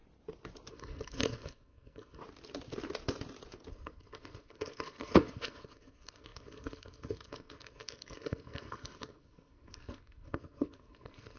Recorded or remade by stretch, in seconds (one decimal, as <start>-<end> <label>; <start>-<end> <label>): 0.0-0.7 recorded; 0.7-2.2 remade; 2.2-3.7 recorded; 3.7-11.4 remade